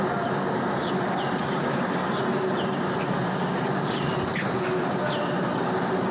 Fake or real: real